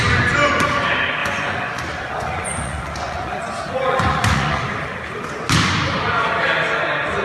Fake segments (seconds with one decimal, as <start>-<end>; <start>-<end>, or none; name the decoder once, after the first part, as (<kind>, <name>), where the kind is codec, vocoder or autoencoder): 1.2-4.6 (vocoder, Vocos)